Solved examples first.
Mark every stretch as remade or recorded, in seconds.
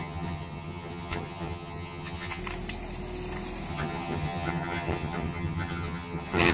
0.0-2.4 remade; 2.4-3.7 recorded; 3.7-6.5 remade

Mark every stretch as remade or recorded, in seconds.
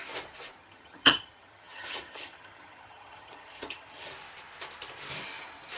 0.0-0.6 recorded; 0.6-4.1 remade; 4.1-5.8 recorded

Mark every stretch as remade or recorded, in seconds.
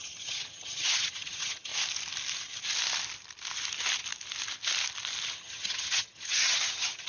0.0-1.7 remade; 1.7-5.3 recorded; 5.3-7.1 remade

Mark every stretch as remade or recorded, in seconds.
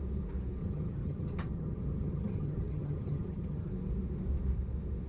0.0-0.6 recorded; 0.6-3.7 remade; 3.7-5.1 recorded